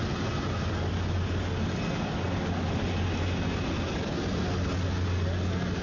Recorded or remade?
recorded